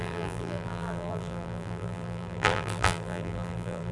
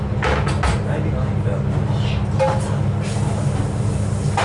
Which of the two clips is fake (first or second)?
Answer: first